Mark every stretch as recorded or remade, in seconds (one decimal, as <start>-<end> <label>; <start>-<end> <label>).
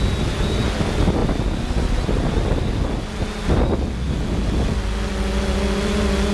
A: 0.0-6.3 recorded